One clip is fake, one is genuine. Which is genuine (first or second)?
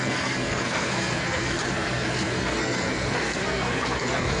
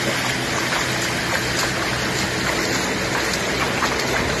second